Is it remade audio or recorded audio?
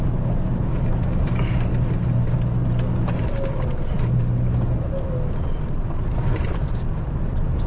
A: recorded